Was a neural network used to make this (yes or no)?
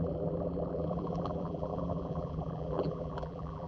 yes